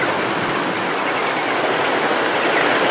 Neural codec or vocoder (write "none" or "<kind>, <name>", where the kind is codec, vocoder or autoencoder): none